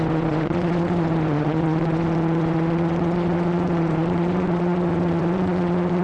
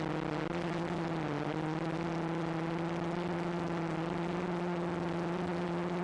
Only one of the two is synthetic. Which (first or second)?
first